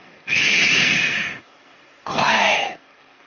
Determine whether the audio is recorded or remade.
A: remade